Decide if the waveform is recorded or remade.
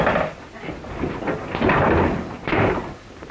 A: recorded